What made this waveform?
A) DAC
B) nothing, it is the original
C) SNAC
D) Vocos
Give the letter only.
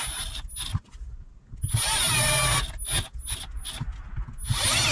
B